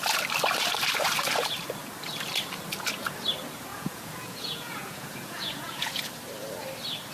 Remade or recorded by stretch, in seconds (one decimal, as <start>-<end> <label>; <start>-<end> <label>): 0.0-3.7 recorded; 3.7-6.1 remade; 6.1-7.1 recorded